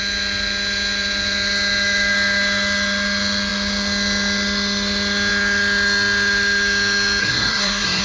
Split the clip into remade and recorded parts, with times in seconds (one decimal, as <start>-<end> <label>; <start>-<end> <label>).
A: 0.0-7.2 recorded; 7.2-8.0 remade